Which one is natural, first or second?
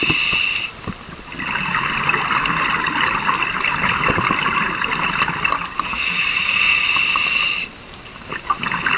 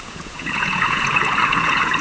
first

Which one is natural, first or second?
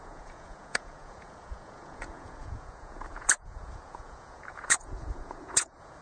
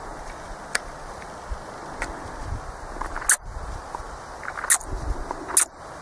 second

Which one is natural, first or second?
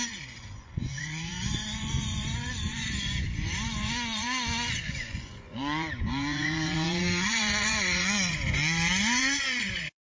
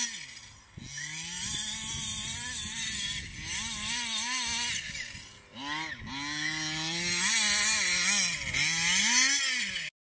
second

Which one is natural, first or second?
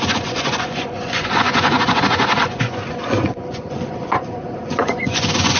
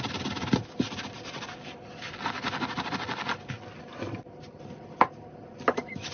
second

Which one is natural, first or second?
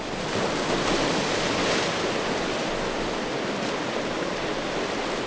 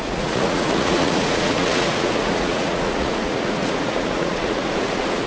first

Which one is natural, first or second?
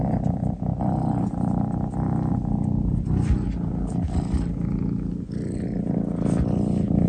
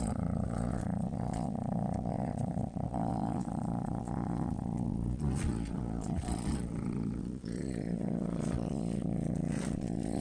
first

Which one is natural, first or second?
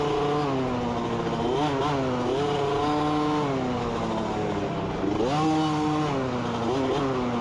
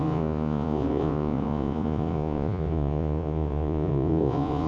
first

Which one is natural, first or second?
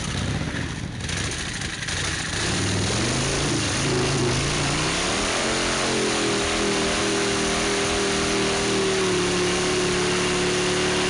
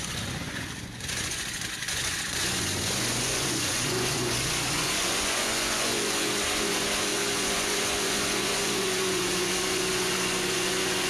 first